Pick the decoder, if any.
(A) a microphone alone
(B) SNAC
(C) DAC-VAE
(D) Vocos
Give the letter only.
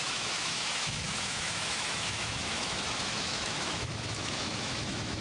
C